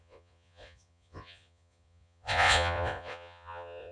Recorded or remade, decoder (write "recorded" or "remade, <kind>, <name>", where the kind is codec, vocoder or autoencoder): remade, vocoder, Vocos